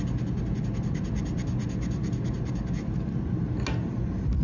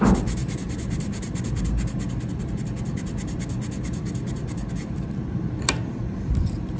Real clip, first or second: first